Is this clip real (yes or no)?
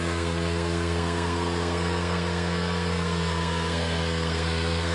no